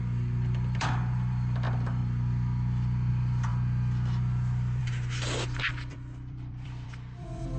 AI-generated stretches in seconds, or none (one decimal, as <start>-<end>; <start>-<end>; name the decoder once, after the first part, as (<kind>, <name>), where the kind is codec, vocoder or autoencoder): 0.0-2.0 (vocoder, BigVGAN v2); 3.1-3.5; 4.8-7.6